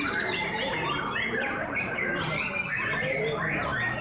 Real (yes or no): no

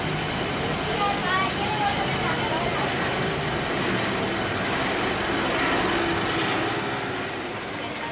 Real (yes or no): yes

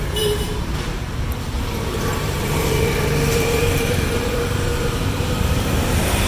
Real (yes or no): no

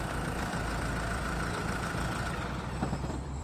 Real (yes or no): no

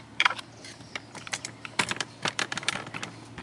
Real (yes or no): no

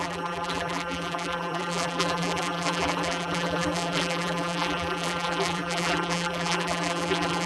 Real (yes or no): no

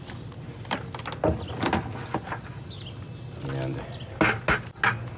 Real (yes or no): yes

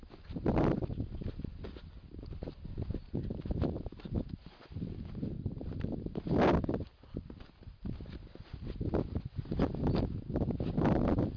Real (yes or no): yes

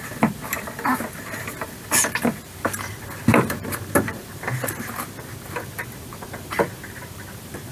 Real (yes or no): no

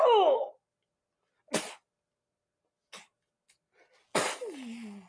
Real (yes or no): yes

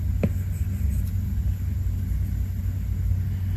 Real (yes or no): yes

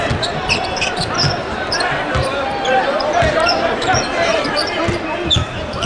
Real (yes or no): no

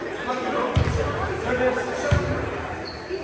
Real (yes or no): yes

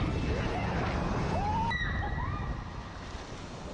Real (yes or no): yes